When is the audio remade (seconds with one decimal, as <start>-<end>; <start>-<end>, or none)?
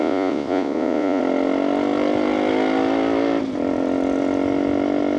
0.0-1.2